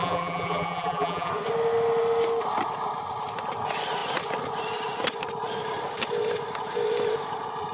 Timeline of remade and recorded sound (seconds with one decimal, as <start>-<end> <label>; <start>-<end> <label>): 0.0-1.3 remade; 1.3-7.7 recorded